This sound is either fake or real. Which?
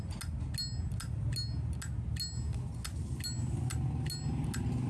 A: real